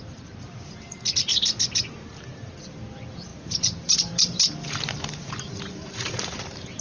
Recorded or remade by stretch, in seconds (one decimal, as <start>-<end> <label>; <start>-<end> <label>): 0.0-3.3 recorded; 3.3-6.8 remade